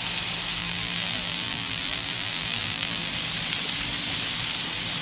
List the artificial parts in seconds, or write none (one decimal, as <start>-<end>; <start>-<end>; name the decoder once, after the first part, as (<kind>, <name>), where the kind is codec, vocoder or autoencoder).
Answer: 0.6-3.1 (vocoder, BigVGAN v2)